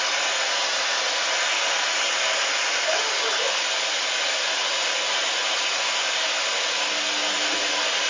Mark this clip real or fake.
real